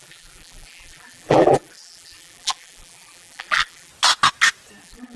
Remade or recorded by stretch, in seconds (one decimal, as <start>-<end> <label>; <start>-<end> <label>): 0.0-3.9 remade; 3.9-4.8 recorded; 4.8-5.2 remade